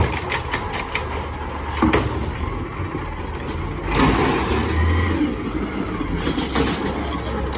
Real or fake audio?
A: real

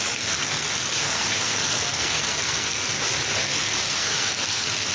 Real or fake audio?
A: fake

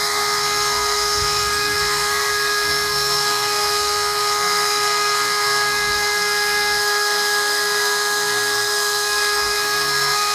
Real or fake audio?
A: fake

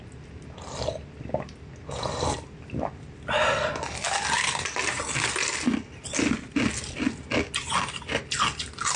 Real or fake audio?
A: real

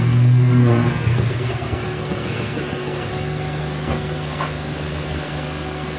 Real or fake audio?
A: fake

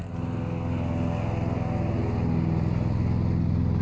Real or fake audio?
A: real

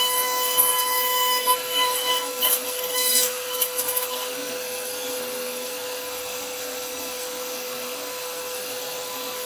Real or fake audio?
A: fake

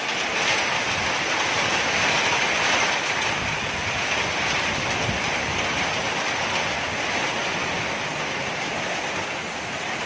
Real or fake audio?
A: real